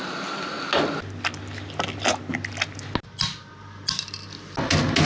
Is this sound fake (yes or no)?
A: no